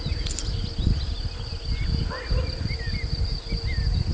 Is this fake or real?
real